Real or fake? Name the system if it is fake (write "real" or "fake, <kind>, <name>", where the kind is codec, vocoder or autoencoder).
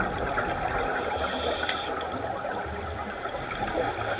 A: real